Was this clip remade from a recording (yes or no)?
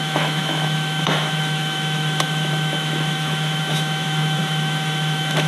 yes